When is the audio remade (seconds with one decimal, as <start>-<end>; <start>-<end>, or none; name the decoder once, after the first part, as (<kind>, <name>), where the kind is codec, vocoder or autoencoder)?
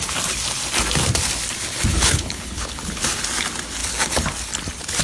1.9-3.1 (codec, HILCodec)